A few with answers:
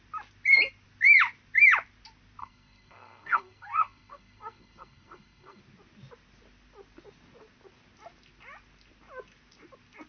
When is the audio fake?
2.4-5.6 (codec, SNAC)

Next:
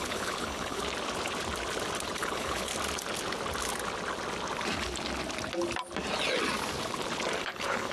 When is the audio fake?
0.0-0.8 (codec, HILCodec); 2.2-2.7; 7.4-7.9

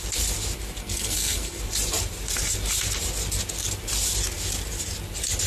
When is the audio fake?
0.8-1.6 (codec, SNAC)

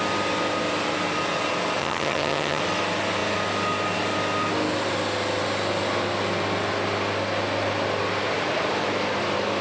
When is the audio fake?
1.8-2.6 (vocoder, HiFi-GAN)